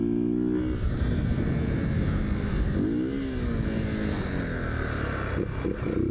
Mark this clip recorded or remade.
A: recorded